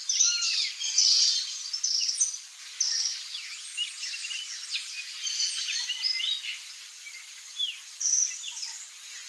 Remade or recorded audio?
recorded